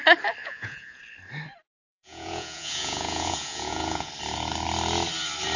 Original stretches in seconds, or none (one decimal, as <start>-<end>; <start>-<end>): 0.0-0.4; 1.0-1.8; 4.1-5.6